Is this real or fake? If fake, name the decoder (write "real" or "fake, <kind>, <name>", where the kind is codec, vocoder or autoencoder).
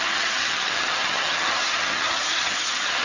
fake, vocoder, HiFi-GAN